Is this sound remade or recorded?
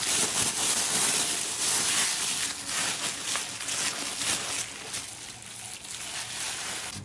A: recorded